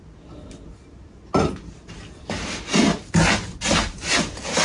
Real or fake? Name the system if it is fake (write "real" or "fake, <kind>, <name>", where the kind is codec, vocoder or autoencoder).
real